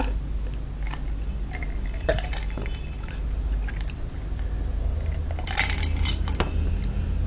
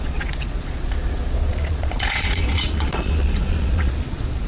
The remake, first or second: second